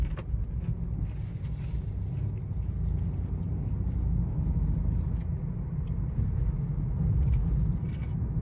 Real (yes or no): yes